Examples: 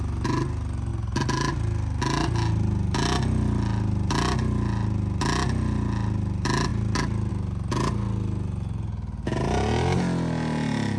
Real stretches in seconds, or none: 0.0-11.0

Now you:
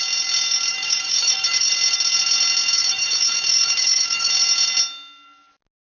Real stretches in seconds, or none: 0.0-0.7; 1.7-2.8; 4.3-5.8

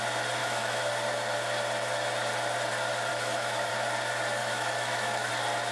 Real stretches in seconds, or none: 0.0-0.4; 0.9-3.1; 3.7-4.4; 5.3-5.7

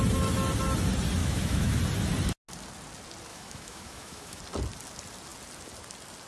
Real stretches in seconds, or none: 0.0-1.2; 1.8-3.3; 4.4-6.3